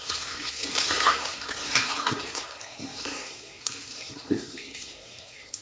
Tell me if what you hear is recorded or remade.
remade